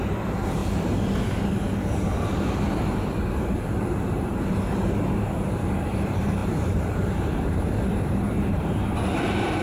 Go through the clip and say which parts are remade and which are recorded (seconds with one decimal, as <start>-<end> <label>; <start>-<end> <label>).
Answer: 0.0-0.6 remade; 0.6-3.6 recorded; 3.6-9.6 remade